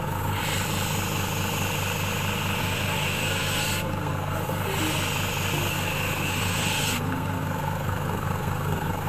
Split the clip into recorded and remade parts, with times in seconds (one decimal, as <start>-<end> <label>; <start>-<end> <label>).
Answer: 0.0-0.4 remade; 0.4-2.6 recorded; 2.6-4.6 remade; 4.6-5.7 recorded; 5.7-9.1 remade